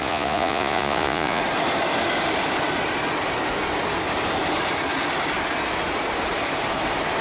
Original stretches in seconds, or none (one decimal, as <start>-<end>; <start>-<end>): 1.4-7.2